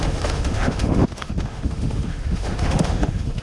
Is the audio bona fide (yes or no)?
no